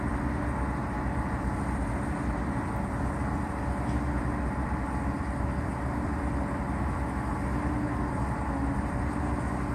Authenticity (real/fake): real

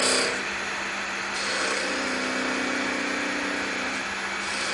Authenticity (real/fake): real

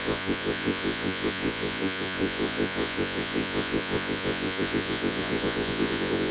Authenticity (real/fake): fake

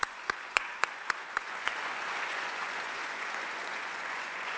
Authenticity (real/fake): fake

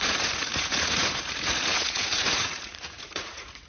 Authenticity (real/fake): fake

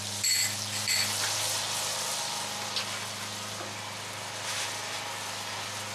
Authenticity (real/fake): real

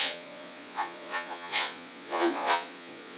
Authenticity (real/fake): fake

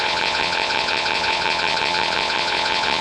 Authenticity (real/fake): fake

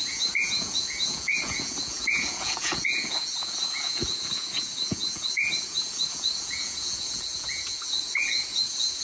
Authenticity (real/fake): fake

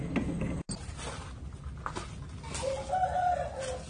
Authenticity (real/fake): real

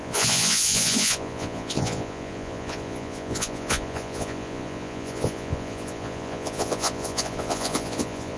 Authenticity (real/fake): fake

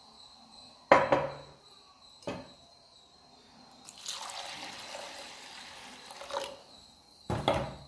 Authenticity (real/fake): real